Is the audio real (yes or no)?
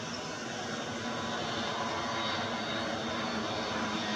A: yes